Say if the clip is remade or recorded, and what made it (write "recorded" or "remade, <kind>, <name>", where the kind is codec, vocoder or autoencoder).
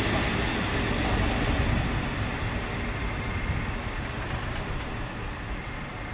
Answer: recorded